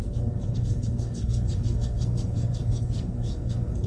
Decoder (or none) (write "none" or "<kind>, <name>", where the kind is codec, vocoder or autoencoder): codec, SNAC